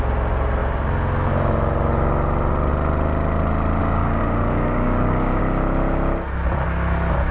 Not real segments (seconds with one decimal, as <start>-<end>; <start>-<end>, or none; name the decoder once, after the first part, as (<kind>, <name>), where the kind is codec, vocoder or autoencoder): 3.8-5.4 (codec, DAC)

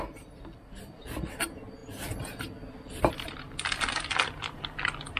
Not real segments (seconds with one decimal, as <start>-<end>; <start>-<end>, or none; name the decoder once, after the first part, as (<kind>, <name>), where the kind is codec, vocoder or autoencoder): none